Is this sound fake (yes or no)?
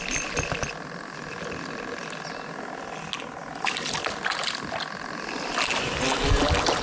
no